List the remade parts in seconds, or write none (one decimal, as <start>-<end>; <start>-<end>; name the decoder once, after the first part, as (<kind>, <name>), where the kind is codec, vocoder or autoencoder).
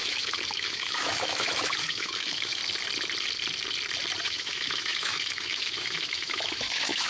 0.0-2.6 (autoencoder, DAC-VAE); 4.2-7.1